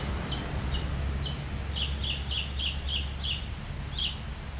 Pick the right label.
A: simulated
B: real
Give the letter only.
B